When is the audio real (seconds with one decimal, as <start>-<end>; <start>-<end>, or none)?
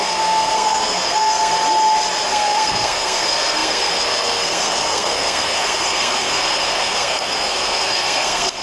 1.5-2.3